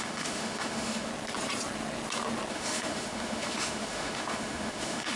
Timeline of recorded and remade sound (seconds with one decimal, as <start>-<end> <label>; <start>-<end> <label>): 0.0-1.1 remade; 1.1-2.5 recorded; 2.5-5.2 remade